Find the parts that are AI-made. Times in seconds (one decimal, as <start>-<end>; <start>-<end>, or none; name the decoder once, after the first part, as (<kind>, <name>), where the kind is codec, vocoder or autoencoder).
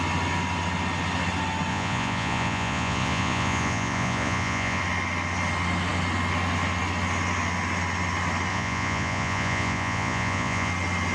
1.7-4.8 (vocoder, Vocos); 8.5-10.7